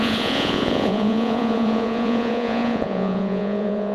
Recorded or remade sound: remade